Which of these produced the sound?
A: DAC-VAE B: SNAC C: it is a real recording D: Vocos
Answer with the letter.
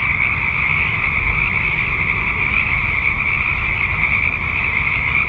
C